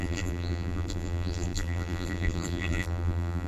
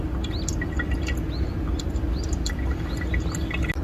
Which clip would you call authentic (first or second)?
second